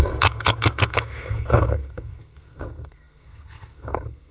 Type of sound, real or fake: fake